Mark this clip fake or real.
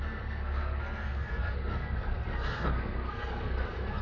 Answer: fake